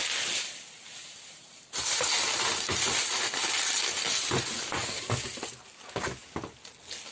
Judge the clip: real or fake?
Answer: real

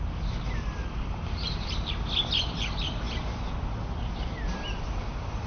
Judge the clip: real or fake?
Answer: real